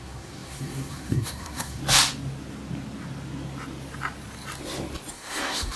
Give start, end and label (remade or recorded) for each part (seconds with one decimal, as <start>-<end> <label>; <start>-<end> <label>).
0.0-1.8 remade; 1.8-5.1 recorded; 5.1-5.8 remade

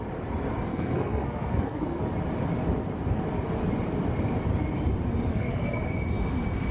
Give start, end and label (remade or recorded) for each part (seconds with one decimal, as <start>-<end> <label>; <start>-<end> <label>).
0.0-0.7 recorded; 0.7-2.0 remade; 2.0-5.3 recorded; 5.3-5.8 remade; 5.8-6.7 recorded